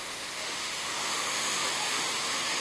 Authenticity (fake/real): fake